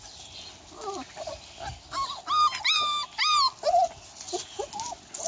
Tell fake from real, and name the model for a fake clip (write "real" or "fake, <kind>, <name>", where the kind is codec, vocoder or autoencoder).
real